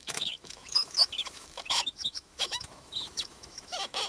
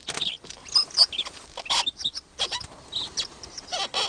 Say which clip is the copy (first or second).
first